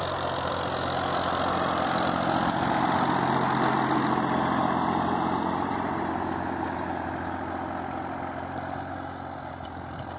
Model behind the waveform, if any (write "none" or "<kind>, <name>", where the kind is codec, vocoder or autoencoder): none